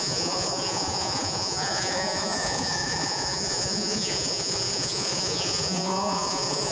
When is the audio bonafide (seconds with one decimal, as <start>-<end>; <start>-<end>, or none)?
none